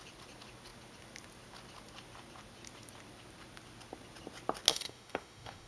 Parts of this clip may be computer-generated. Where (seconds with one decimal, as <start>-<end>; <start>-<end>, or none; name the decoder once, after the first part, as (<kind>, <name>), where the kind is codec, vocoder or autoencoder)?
4.7-5.7 (autoencoder, DAC-VAE)